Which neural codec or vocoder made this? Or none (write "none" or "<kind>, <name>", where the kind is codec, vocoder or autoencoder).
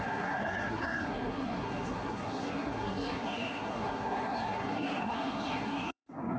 codec, SNAC